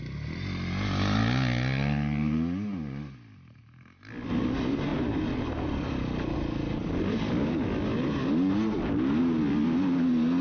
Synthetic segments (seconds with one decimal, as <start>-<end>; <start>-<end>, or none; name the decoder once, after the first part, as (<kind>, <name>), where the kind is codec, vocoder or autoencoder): none